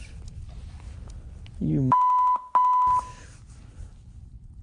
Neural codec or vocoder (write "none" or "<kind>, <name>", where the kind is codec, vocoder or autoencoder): none